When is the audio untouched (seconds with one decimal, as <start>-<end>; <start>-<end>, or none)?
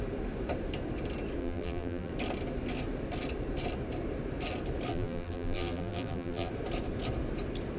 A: 0.0-1.4; 2.1-4.9; 6.5-7.8